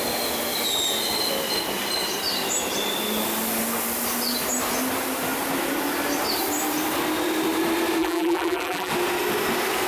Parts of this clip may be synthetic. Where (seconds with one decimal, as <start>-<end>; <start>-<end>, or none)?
8.0-8.9